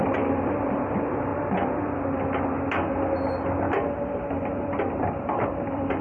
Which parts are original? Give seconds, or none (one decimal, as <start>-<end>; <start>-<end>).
1.3-4.9